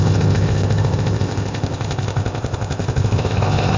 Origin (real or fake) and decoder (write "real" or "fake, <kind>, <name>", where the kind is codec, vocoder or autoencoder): fake, codec, ZipCodec